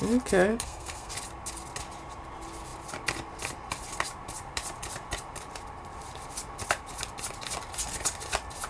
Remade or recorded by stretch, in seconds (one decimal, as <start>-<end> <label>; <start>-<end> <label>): 0.0-0.5 recorded; 0.5-1.1 remade; 1.1-8.7 recorded